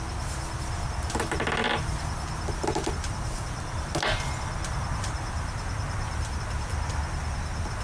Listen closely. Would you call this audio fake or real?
real